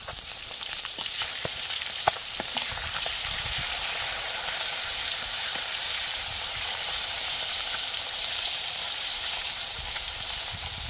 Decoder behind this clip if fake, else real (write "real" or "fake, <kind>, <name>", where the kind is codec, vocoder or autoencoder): fake, vocoder, BigVGAN v2